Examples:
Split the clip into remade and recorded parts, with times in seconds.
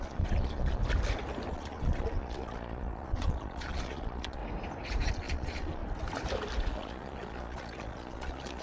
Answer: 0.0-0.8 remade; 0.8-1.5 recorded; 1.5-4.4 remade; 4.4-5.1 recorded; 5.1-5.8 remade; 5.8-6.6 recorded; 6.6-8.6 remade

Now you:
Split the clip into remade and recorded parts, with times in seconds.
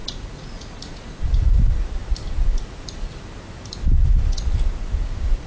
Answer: 0.0-1.2 remade; 1.2-5.5 recorded